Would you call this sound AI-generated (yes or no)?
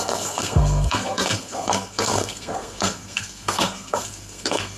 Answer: yes